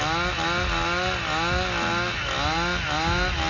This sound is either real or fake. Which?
real